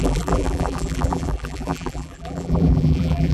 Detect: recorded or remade remade